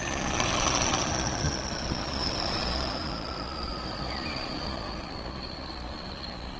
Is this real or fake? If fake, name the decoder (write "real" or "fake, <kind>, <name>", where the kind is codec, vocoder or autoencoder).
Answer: fake, vocoder, Vocos